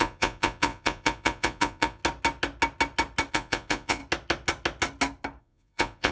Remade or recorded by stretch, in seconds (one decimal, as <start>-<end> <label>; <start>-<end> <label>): 0.0-2.0 remade; 2.0-3.3 recorded; 3.3-4.0 remade; 4.0-5.4 recorded; 5.4-6.1 remade